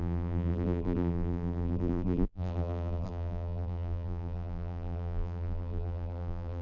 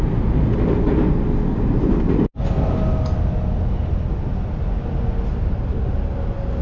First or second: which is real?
second